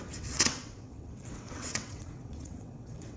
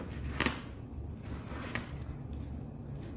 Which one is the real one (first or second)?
second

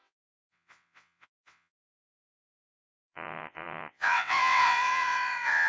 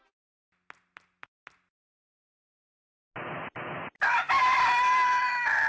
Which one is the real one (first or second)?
second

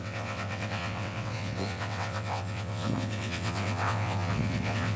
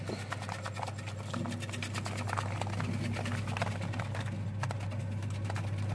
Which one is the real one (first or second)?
second